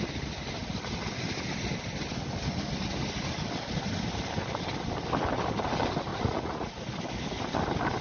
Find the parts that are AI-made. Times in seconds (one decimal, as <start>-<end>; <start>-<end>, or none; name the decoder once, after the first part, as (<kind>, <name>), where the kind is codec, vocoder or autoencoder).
6.1-6.7 (vocoder, Vocos)